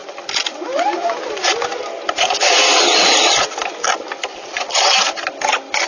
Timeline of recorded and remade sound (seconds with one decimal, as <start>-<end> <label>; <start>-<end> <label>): 0.0-5.9 recorded